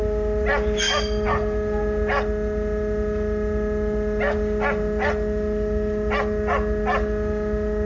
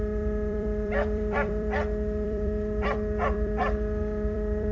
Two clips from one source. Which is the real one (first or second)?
first